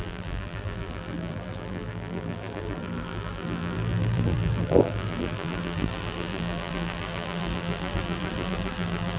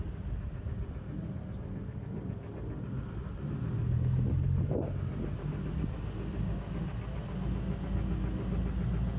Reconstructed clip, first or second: first